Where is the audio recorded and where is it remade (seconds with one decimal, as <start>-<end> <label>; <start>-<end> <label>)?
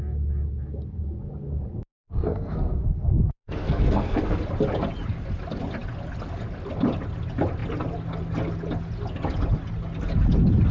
0.0-1.9 recorded; 1.9-4.4 remade; 4.4-10.7 recorded